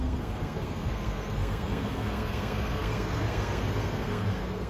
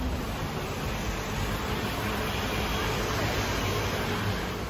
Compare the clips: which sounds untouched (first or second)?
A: second